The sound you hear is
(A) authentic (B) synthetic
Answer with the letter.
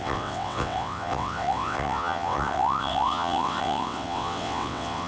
B